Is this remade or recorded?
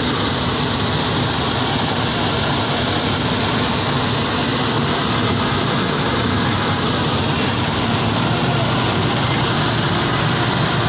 recorded